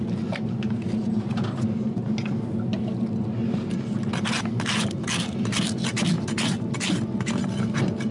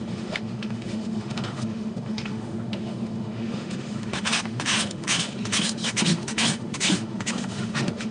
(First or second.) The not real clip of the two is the second